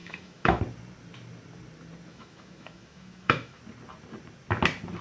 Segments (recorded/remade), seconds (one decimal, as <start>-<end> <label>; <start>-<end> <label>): 0.0-0.6 remade; 0.6-2.1 recorded; 2.1-3.6 remade; 3.6-5.0 recorded